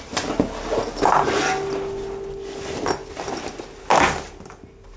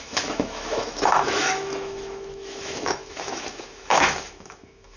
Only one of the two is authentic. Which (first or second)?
first